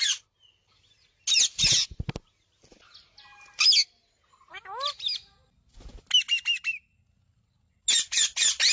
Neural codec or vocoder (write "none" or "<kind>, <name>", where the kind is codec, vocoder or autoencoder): none